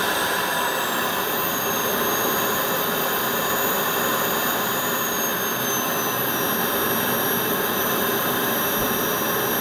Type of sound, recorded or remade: recorded